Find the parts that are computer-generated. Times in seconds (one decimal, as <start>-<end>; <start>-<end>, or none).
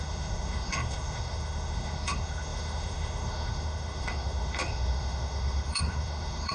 0.0-6.5